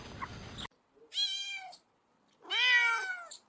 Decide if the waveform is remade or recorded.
recorded